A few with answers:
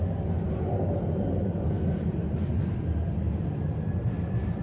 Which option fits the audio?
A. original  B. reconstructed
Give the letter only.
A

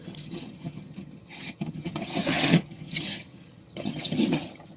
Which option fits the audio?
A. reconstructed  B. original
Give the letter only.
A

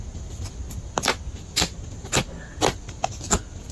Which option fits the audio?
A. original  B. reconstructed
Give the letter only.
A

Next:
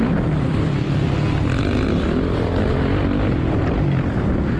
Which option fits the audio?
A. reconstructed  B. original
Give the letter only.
B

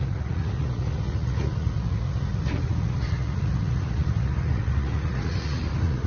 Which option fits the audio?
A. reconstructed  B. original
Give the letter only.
A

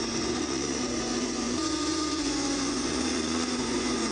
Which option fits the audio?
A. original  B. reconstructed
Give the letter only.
B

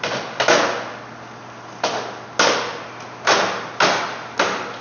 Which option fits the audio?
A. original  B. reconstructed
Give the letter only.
A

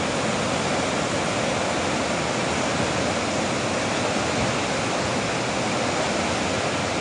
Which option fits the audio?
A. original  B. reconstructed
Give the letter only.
A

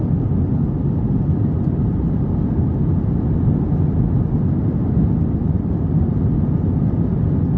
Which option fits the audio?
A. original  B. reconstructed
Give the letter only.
A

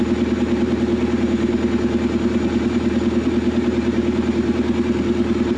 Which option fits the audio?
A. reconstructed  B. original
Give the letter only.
A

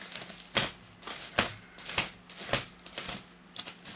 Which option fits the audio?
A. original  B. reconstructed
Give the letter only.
A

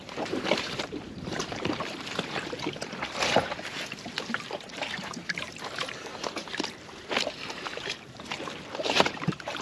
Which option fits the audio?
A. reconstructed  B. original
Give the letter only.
A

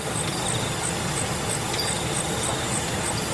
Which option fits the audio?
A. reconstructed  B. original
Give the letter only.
B